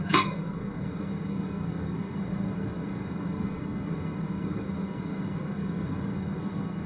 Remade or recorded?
remade